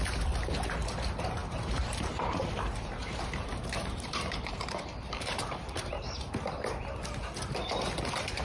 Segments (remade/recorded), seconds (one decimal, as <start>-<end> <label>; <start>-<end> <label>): 0.0-1.4 recorded; 1.4-6.4 remade; 6.4-8.4 recorded